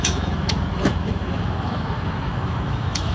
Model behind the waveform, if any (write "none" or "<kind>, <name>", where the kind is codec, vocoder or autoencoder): autoencoder, DAC-VAE